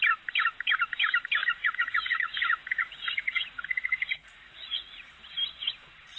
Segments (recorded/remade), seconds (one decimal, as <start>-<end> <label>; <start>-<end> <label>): 0.0-1.4 recorded; 1.4-5.1 remade; 5.1-6.2 recorded